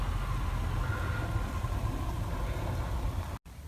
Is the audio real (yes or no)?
yes